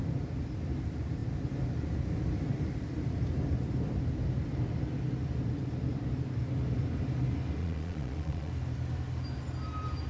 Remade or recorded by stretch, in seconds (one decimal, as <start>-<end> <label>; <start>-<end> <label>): 0.0-7.6 recorded; 7.6-8.5 remade; 8.5-10.1 recorded